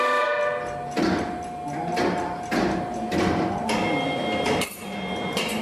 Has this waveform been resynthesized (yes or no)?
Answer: no